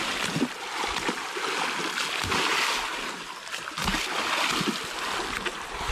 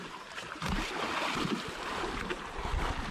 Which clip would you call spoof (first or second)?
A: second